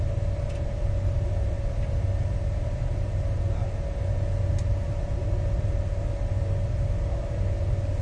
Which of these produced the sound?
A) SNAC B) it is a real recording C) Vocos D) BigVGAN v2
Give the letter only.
B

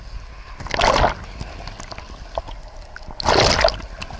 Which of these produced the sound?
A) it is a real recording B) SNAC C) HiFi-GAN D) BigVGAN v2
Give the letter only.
A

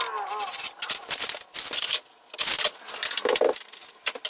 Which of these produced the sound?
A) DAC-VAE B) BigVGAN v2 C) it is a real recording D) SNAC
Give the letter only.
C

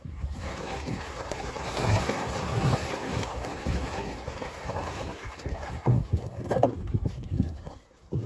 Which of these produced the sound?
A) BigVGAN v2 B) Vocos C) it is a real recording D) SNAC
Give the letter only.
D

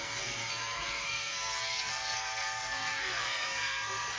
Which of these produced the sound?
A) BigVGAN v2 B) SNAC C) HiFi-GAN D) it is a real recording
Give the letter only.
B